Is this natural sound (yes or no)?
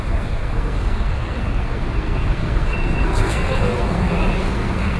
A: no